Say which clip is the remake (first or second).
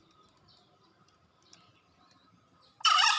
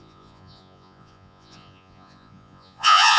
second